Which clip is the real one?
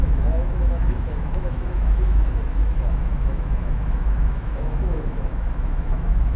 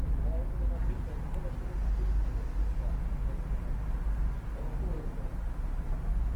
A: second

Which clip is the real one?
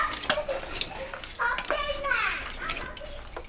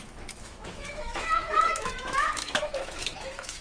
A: first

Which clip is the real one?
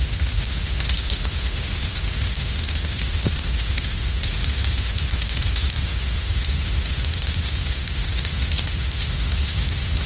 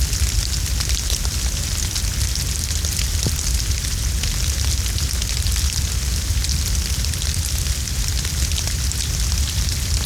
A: second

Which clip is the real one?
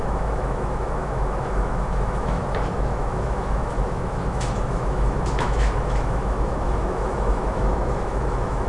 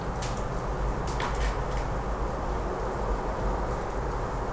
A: second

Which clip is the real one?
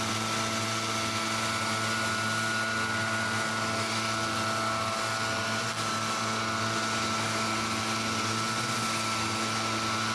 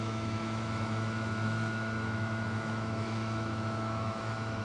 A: first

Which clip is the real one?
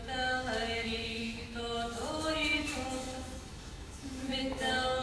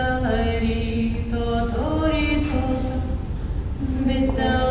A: second